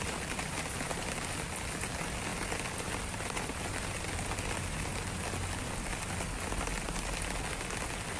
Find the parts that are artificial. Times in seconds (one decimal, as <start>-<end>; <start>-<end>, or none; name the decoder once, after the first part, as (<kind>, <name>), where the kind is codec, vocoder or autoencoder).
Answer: none